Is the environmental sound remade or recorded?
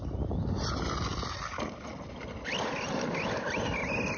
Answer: recorded